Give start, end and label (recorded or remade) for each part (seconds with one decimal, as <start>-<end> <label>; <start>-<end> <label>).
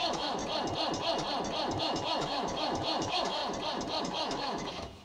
0.0-0.4 remade; 0.4-1.8 recorded; 1.8-3.4 remade; 3.4-4.0 recorded; 4.0-5.0 remade